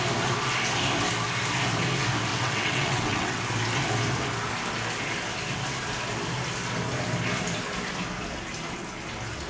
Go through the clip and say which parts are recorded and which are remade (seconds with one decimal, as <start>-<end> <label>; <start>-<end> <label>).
0.0-2.3 recorded; 2.3-3.4 remade; 3.4-9.5 recorded